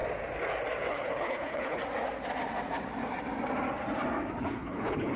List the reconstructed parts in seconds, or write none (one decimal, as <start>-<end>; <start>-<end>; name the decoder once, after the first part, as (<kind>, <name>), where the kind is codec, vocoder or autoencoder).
0.9-1.8 (codec, HILCodec); 4.4-5.2